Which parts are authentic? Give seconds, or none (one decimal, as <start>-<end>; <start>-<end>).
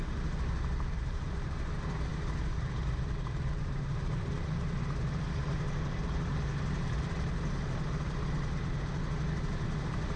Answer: 0.0-2.1; 4.5-10.2